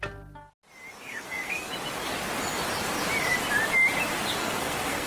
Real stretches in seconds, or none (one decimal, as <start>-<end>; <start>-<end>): 0.0-1.1; 1.7-4.4